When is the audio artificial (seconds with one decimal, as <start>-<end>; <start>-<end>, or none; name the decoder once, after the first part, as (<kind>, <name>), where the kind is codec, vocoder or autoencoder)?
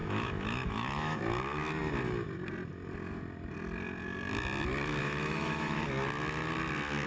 0.0-1.2 (autoencoder, DAC-VAE); 5.0-5.9